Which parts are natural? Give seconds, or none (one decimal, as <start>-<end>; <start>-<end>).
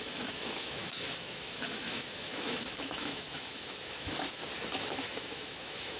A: 4.4-4.9